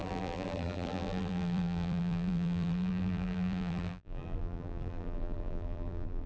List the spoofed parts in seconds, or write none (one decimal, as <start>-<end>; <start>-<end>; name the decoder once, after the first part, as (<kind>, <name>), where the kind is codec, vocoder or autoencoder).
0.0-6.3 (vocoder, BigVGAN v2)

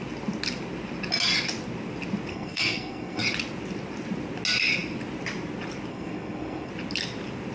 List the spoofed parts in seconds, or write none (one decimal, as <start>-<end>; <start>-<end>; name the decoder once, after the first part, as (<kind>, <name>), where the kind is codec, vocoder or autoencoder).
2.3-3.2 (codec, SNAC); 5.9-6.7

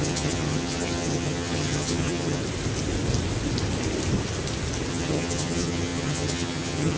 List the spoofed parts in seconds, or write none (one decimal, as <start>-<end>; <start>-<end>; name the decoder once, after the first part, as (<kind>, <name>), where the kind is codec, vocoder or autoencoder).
0.0-2.4 (vocoder, HiFi-GAN); 4.9-7.0

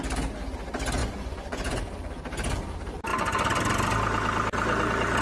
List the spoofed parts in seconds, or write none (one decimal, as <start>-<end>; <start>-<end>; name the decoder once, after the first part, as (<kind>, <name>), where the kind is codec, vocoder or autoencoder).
1.0-1.8 (vocoder, Vocos)

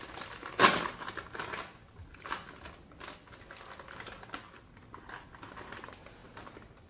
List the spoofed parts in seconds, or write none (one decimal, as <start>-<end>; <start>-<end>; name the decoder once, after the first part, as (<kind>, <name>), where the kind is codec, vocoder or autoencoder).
none

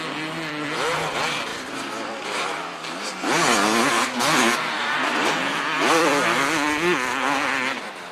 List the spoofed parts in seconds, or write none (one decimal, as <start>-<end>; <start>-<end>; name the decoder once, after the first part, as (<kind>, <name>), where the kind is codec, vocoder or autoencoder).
1.5-2.6 (vocoder, BigVGAN v2)